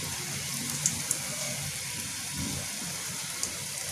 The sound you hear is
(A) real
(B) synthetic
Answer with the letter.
B